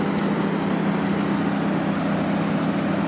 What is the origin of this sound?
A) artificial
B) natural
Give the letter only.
B